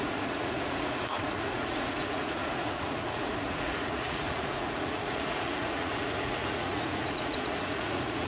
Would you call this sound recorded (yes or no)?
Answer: no